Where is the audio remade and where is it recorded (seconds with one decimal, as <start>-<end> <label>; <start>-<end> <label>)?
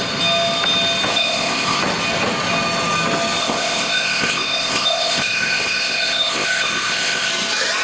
0.0-1.1 recorded; 1.1-1.8 remade; 1.8-3.4 recorded; 3.4-7.3 remade; 7.3-7.8 recorded